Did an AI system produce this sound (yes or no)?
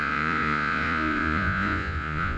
yes